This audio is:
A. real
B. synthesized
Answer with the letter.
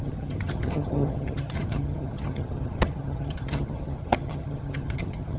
B